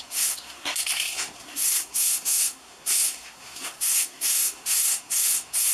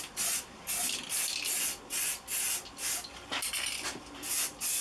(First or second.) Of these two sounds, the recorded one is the second